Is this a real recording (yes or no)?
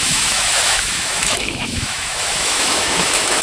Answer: no